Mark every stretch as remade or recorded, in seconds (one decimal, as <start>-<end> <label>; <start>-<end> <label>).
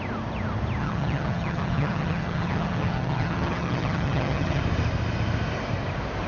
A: 0.0-0.8 recorded; 0.8-4.6 remade; 4.6-6.3 recorded